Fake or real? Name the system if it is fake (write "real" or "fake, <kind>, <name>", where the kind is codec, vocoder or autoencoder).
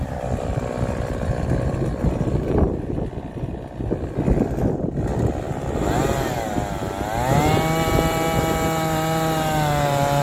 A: real